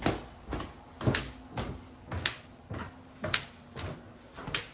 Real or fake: real